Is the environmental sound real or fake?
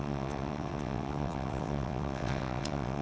fake